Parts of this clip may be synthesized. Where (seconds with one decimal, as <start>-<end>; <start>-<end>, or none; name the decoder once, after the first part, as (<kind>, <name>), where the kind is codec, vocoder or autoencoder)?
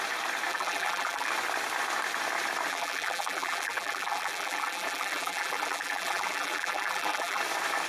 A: 0.5-1.3 (vocoder, BigVGAN v2); 2.7-7.4